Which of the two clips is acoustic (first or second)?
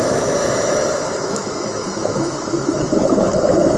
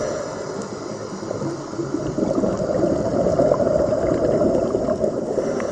second